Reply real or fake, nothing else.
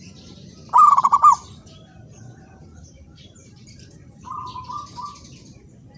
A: fake